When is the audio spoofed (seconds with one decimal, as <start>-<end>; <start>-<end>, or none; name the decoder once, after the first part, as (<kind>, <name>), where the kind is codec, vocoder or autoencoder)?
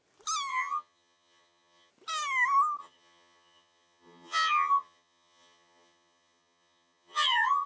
0.5-1.9 (vocoder, HiFi-GAN); 2.8-7.7